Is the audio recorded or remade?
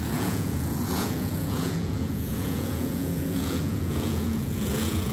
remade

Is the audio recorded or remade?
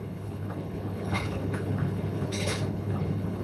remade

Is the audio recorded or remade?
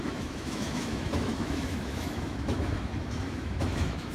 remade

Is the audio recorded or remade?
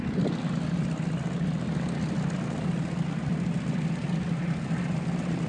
recorded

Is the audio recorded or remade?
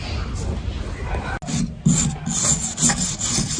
recorded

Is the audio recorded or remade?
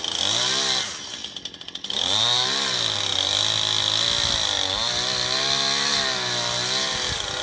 recorded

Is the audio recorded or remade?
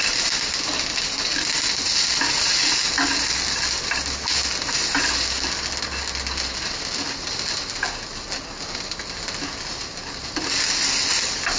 recorded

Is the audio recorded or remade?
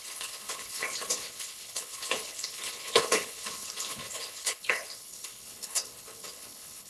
remade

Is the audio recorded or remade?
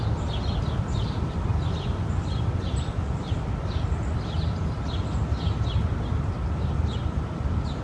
recorded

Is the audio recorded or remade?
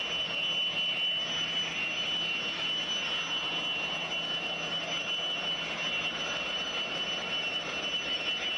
recorded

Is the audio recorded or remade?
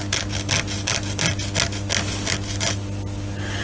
recorded